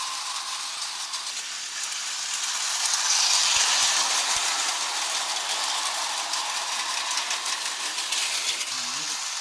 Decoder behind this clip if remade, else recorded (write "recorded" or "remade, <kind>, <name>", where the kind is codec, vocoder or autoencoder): recorded